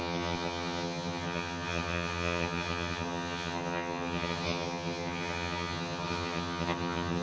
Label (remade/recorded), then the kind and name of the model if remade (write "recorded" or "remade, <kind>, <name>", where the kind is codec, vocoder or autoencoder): remade, vocoder, HiFi-GAN